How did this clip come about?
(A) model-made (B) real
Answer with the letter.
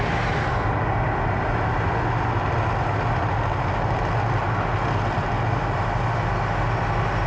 B